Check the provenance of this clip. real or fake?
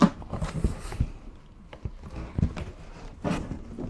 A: real